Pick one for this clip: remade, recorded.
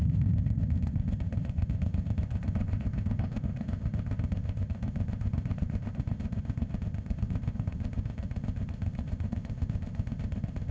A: remade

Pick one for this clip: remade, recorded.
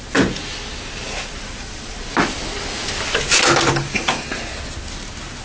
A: recorded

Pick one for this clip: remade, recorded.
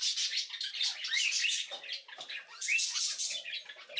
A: recorded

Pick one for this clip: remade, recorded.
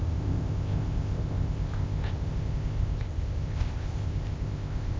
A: remade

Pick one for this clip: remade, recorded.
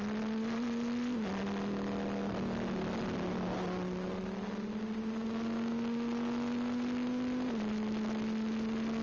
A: recorded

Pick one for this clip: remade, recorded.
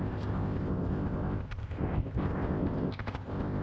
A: remade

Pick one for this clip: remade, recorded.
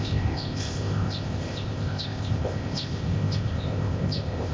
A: remade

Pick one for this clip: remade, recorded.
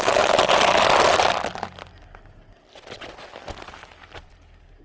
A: recorded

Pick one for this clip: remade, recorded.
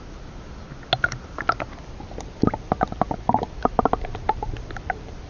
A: recorded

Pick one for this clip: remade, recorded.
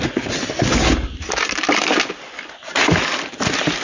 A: recorded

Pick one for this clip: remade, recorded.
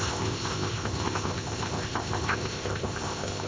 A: remade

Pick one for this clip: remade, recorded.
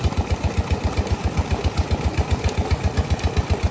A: recorded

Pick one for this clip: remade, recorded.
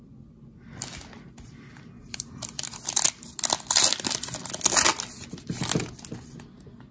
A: recorded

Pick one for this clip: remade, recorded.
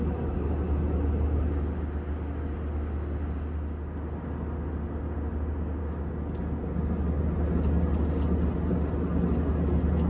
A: recorded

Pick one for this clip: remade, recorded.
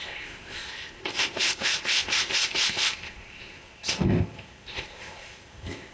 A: remade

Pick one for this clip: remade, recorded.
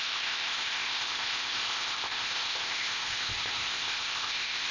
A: remade